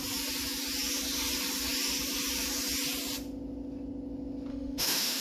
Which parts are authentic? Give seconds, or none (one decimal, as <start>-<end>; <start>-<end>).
0.0-4.5

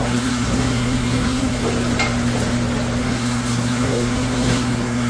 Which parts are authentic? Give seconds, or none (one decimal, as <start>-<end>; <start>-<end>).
1.6-3.0

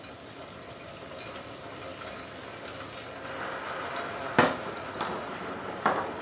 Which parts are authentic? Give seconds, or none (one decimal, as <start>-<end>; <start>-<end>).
0.0-6.2

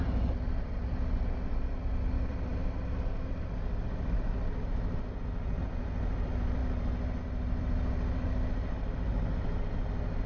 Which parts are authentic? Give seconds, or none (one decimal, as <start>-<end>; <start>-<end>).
6.6-7.2

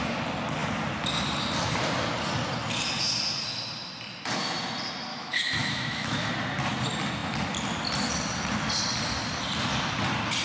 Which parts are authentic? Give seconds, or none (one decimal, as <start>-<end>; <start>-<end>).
0.0-5.1; 6.3-10.4